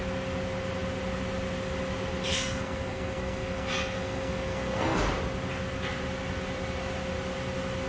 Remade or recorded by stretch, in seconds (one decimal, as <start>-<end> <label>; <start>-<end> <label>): 0.0-2.3 recorded; 2.3-5.0 remade; 5.0-7.9 recorded